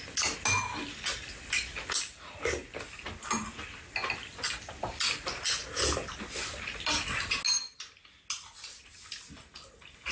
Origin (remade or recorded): recorded